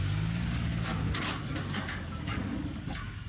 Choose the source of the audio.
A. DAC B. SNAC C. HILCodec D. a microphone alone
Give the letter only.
A